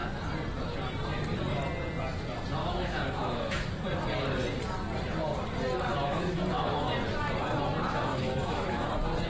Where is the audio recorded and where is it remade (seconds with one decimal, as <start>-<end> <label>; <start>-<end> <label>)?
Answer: 0.0-2.6 recorded; 2.6-3.7 remade; 3.7-5.9 recorded; 5.9-6.9 remade; 6.9-8.1 recorded; 8.1-8.9 remade; 8.9-9.3 recorded